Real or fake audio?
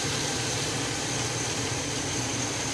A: real